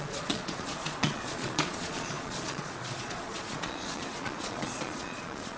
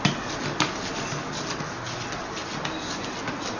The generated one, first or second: first